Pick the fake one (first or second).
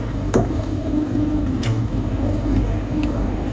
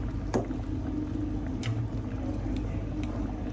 first